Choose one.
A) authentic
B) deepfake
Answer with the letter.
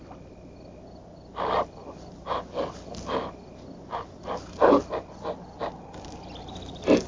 A